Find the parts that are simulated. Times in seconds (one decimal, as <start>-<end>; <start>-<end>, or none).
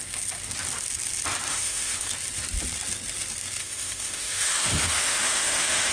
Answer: 1.5-2.1; 3.6-5.9